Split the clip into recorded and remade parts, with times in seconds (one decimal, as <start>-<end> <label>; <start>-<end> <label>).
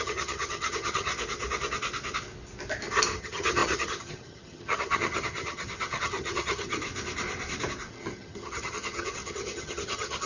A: 0.0-1.1 remade; 1.1-3.2 recorded; 3.2-6.9 remade; 6.9-7.9 recorded; 7.9-10.3 remade